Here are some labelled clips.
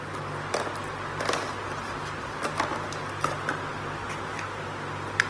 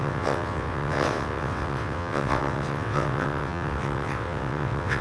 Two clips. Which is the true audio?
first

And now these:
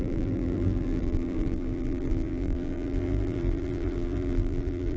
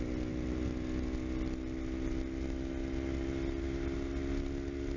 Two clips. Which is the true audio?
second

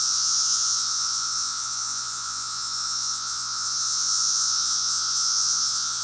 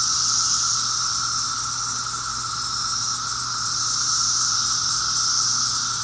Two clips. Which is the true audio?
second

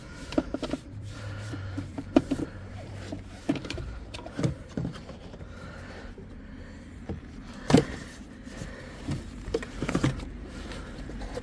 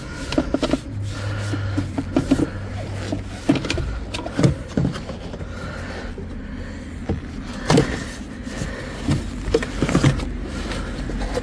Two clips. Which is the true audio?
second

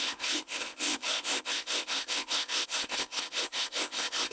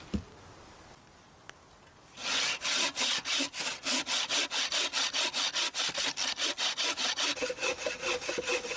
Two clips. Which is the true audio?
second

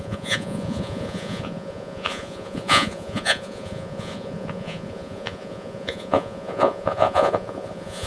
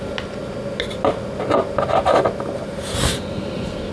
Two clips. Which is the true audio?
second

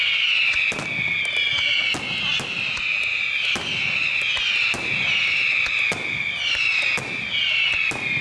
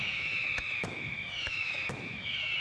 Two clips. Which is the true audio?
first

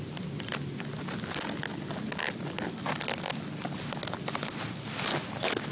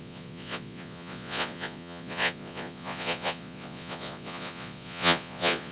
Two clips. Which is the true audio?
first